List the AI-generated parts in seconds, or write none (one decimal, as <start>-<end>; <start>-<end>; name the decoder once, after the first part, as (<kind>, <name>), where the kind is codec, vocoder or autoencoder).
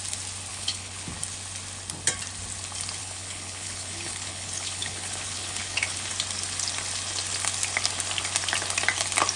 0.5-1.1 (codec, HILCodec); 3.0-6.1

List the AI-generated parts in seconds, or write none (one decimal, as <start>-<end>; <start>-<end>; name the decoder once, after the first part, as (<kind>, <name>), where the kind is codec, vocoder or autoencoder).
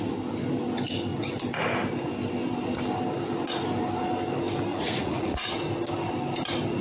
4.7-5.5 (vocoder, Vocos)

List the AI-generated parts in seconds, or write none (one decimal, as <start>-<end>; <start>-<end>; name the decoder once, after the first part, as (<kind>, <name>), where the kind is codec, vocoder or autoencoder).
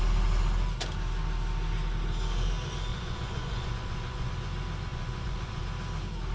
2.9-4.3 (vocoder, Vocos); 4.9-5.6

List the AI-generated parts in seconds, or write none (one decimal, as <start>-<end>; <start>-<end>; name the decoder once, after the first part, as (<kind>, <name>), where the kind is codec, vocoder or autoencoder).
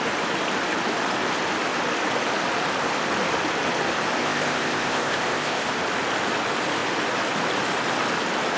4.2-5.8 (codec, ZipCodec)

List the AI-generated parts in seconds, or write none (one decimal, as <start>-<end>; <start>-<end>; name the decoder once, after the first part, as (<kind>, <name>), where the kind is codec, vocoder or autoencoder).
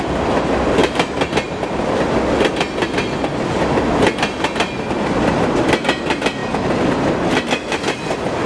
none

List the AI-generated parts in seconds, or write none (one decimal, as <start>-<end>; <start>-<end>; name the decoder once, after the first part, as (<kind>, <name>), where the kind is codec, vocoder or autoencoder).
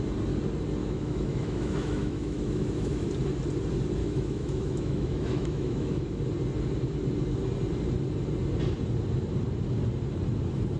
0.8-3.1 (autoencoder, DAC-VAE); 4.0-6.2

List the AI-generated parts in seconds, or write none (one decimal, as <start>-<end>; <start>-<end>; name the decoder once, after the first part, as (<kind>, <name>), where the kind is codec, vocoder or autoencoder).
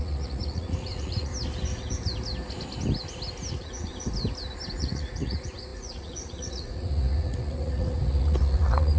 0.0-1.3 (vocoder, Vocos); 3.5-3.9; 4.8-9.0